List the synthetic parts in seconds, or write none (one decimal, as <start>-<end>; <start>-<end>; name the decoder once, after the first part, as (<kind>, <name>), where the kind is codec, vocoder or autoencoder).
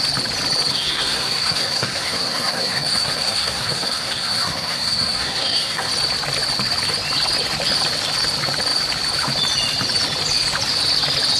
0.7-5.9 (codec, SNAC)